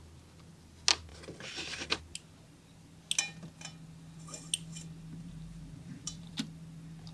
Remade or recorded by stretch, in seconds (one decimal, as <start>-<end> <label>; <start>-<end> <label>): 0.0-1.1 recorded; 1.1-2.0 remade; 2.0-5.1 recorded; 5.1-6.4 remade; 6.4-7.1 recorded